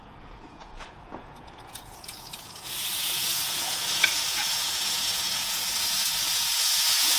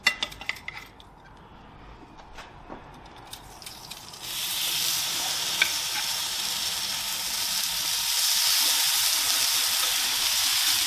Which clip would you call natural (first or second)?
second